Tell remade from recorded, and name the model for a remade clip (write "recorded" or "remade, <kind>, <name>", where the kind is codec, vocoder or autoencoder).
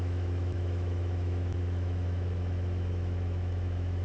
remade, autoencoder, DAC-VAE